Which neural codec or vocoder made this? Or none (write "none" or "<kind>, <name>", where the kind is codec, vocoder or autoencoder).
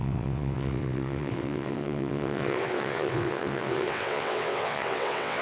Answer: vocoder, WaveNeXt